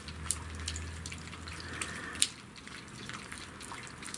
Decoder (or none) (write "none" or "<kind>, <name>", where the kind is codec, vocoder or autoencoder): none